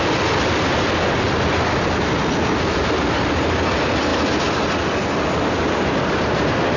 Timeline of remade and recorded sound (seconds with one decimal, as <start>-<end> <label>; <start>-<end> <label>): 0.0-6.8 recorded